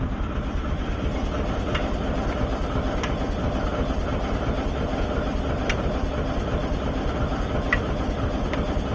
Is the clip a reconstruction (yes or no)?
no